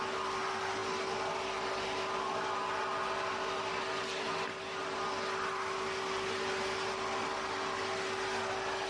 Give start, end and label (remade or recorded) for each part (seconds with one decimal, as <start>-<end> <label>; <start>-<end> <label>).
0.0-8.9 recorded